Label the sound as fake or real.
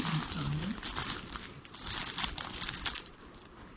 real